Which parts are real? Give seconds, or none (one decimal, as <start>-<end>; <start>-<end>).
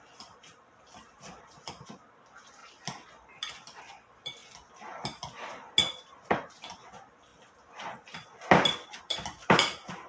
4.4-6.3; 7.3-9.0